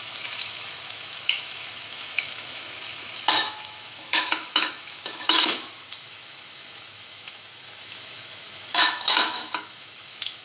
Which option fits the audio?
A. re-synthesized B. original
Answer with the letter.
A